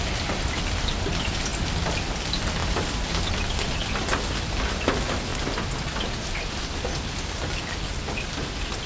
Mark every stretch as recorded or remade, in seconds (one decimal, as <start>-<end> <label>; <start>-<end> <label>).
0.0-3.8 recorded; 3.8-4.6 remade; 4.6-8.9 recorded